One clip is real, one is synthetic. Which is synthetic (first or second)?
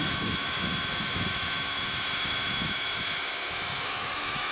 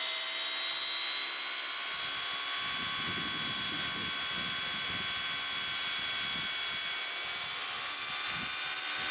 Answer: first